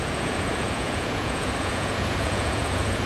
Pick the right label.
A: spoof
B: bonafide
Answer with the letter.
A